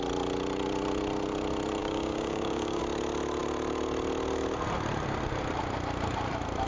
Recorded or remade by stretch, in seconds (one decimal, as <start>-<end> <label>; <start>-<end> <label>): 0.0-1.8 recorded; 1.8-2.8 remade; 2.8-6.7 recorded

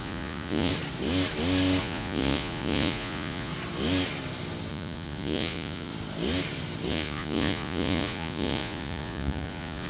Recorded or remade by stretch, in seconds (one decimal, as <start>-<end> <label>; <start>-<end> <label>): 0.0-0.7 remade; 0.7-1.8 recorded; 1.8-3.5 remade; 3.5-4.7 recorded; 4.7-5.9 remade; 5.9-6.9 recorded; 6.9-9.9 remade

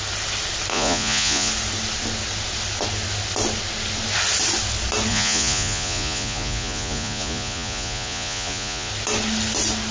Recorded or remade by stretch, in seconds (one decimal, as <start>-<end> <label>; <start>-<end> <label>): 0.0-0.7 recorded; 0.7-1.5 remade; 1.5-5.1 recorded; 5.1-8.9 remade; 8.9-9.9 recorded